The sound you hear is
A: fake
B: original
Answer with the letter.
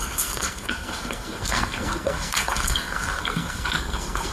A